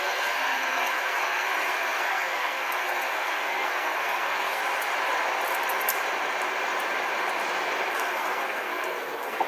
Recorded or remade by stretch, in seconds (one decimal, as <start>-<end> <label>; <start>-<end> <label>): 0.0-4.6 remade; 4.6-7.9 recorded; 7.9-9.5 remade